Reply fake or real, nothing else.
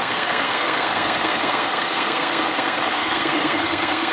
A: fake